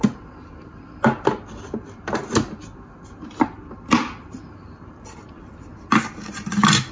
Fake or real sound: real